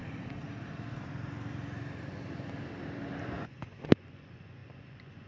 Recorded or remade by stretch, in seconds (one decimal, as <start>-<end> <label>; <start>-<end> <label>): 0.0-3.2 recorded; 3.2-5.3 remade